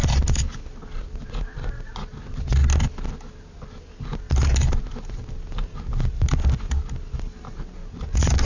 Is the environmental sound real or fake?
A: real